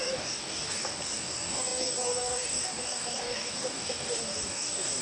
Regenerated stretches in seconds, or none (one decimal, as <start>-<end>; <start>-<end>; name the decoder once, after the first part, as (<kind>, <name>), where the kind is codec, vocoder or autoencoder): 0.0-5.0 (codec, DAC)